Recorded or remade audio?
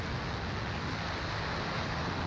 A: recorded